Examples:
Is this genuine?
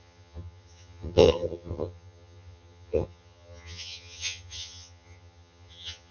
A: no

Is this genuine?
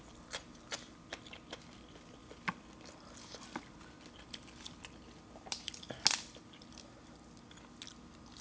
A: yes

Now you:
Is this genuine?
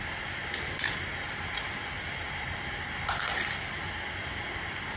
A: yes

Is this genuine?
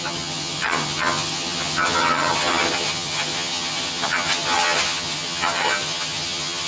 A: no